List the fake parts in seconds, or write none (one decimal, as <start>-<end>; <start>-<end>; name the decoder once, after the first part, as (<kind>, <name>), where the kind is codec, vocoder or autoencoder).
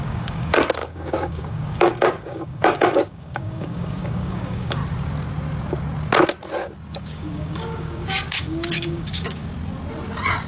0.0-4.8 (codec, DAC); 6.9-9.4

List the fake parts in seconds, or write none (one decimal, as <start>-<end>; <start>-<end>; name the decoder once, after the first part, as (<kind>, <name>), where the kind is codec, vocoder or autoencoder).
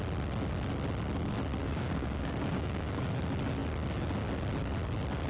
1.6-3.0 (codec, DAC)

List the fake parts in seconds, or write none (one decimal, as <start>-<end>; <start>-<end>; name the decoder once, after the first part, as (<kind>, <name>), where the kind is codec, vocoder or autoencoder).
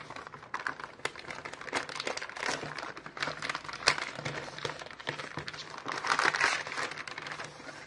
none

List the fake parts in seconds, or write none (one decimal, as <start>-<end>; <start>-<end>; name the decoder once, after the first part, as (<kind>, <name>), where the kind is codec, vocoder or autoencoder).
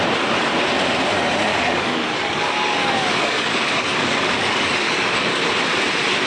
1.5-5.3 (codec, DAC)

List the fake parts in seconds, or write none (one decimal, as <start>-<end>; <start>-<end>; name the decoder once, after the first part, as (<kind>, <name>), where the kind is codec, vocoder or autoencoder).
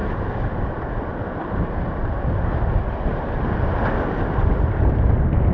none